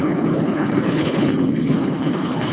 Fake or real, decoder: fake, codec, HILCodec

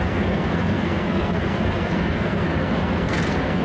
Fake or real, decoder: fake, codec, SNAC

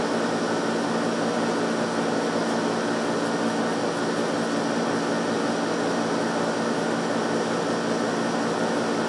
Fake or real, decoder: real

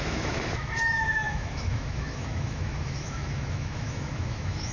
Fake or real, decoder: fake, autoencoder, DAC-VAE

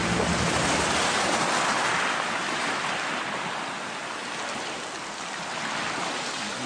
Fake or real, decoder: real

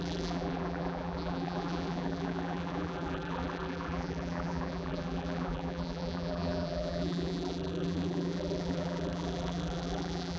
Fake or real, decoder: fake, vocoder, BigVGAN v2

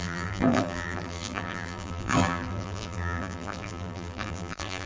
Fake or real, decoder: fake, vocoder, BigVGAN v2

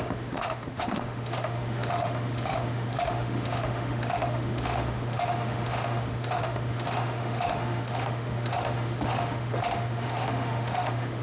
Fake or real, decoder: fake, autoencoder, DAC-VAE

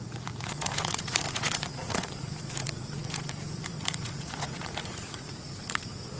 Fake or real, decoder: fake, vocoder, Vocos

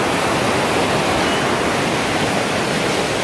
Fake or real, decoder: real